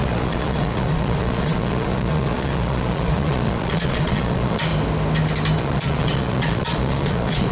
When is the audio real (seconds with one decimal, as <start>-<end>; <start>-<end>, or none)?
4.7-5.6